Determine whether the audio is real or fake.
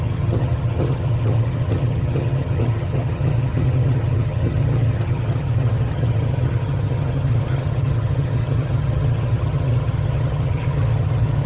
fake